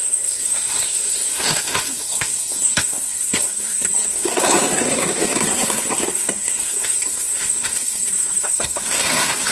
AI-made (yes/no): yes